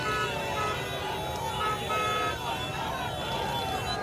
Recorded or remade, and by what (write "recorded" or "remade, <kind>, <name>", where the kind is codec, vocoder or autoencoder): recorded